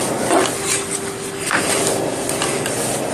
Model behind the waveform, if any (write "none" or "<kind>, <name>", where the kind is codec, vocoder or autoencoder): none